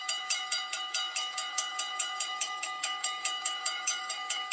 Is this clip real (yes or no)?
no